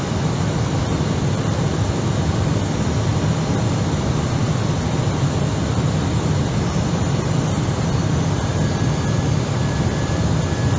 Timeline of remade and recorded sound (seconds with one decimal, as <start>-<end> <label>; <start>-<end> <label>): 0.0-3.1 remade; 3.1-5.7 recorded; 5.7-10.8 remade